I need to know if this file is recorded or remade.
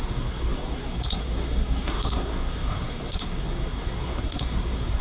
remade